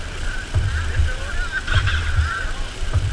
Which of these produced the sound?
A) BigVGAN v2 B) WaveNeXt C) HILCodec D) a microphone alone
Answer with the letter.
D